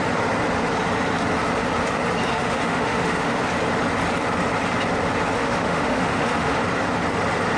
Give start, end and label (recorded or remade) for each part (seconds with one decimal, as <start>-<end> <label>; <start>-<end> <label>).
0.0-2.3 recorded; 2.3-3.4 remade; 3.4-5.4 recorded; 5.4-6.6 remade; 6.6-7.6 recorded